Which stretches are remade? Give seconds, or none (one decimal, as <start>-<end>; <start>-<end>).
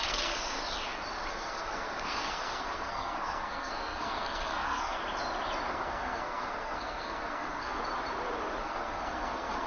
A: 0.0-0.6; 1.3-5.0; 5.7-7.8; 8.6-9.7